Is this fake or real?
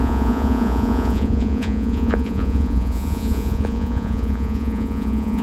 fake